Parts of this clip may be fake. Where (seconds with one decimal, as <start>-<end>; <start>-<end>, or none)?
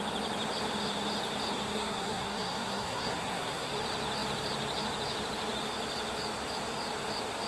1.7-3.7